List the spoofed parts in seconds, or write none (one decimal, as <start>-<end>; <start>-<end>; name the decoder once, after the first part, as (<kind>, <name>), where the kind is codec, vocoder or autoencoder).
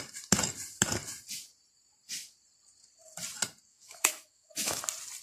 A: 3.7-4.8 (autoencoder, DAC-VAE)